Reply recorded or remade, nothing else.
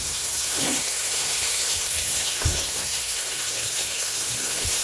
remade